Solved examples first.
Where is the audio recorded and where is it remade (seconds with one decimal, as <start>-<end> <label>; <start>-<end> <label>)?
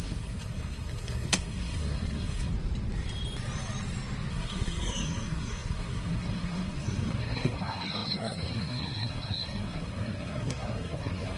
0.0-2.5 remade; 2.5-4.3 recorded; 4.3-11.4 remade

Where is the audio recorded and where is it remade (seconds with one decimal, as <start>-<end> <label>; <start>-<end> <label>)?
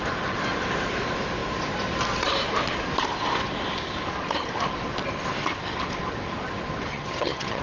0.0-6.9 recorded; 6.9-7.6 remade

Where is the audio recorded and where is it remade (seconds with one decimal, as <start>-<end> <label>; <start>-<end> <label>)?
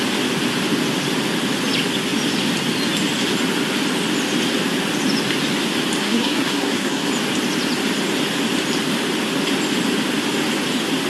0.0-6.0 recorded; 6.0-7.1 remade; 7.1-11.1 recorded